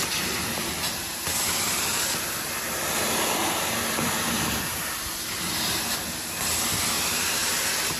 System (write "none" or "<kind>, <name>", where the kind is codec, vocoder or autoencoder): none